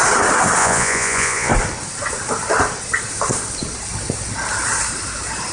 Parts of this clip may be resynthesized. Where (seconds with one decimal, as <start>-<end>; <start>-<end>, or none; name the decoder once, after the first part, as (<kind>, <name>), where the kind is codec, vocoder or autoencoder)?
0.6-1.5 (vocoder, Vocos)